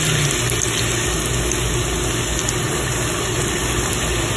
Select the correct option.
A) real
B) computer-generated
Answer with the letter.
A